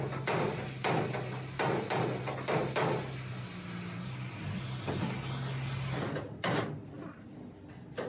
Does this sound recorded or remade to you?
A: recorded